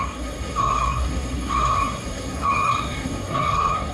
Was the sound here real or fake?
fake